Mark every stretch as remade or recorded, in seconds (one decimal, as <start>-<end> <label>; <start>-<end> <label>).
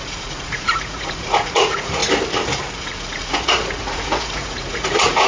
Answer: 0.0-2.0 remade; 2.0-2.8 recorded; 2.8-5.3 remade